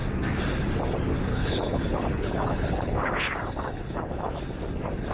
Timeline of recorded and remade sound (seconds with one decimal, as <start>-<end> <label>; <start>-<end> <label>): 0.0-1.3 recorded; 1.3-4.4 remade; 4.4-5.1 recorded